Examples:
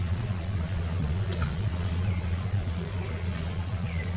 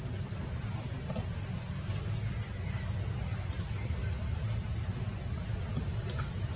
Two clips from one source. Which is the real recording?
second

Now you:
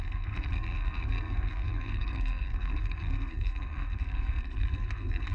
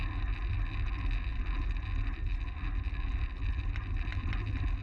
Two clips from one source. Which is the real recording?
second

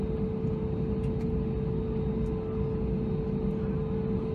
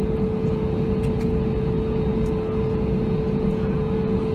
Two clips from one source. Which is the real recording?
first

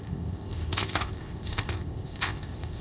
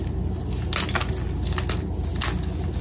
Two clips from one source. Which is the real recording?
second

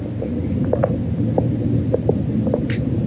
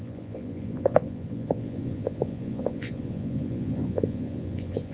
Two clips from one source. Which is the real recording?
first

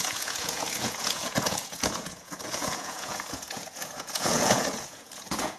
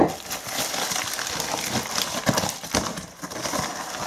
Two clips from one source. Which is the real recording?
second